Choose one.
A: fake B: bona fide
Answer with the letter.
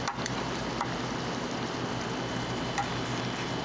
B